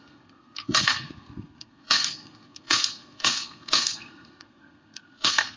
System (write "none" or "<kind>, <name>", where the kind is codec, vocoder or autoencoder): codec, SNAC